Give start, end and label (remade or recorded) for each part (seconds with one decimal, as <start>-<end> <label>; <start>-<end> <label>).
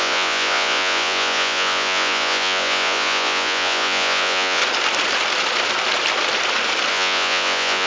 0.0-4.6 remade; 4.6-6.9 recorded; 6.9-7.9 remade